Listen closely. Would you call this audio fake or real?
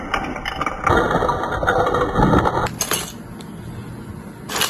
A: real